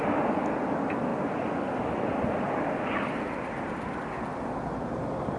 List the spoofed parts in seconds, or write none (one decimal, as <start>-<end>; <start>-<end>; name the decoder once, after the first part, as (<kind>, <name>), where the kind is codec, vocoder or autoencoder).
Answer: none